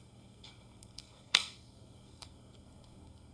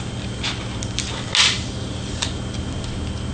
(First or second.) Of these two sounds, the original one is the second